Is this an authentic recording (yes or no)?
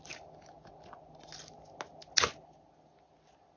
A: yes